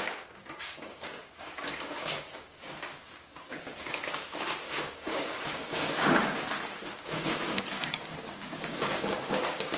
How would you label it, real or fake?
fake